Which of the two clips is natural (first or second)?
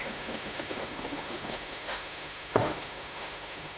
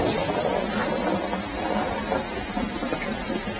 second